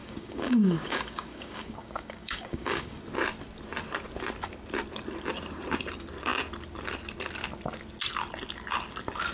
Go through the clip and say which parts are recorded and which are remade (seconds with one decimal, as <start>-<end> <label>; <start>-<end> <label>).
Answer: 0.0-3.0 remade; 3.0-9.3 recorded